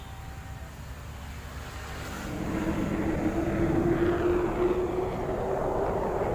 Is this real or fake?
real